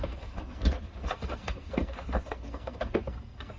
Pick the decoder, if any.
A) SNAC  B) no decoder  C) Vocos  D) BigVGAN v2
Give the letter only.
A